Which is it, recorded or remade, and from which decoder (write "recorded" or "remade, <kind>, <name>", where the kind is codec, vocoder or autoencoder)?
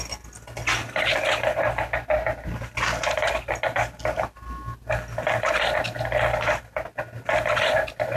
recorded